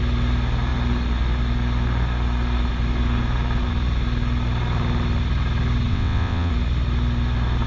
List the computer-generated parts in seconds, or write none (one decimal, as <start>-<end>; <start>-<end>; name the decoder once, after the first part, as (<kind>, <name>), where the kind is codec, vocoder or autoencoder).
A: 5.9-6.5 (vocoder, WaveNeXt)